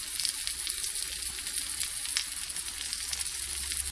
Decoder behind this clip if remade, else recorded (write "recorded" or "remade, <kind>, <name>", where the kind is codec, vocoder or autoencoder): recorded